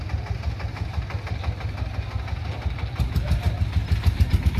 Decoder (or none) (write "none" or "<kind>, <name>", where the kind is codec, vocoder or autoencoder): none